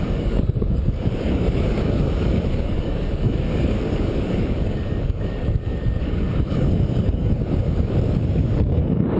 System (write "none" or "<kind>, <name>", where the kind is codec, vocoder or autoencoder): codec, DAC